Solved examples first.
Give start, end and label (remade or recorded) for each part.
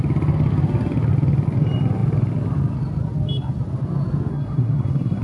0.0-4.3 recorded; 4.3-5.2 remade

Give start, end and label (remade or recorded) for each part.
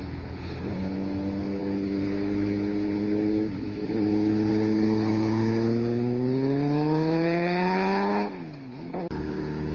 0.0-9.7 remade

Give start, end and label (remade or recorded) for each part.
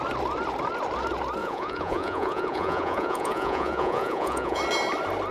0.0-1.4 recorded; 1.4-4.6 remade; 4.6-5.3 recorded